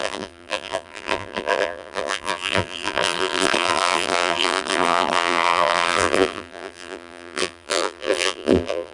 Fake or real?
fake